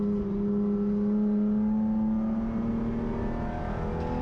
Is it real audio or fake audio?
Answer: real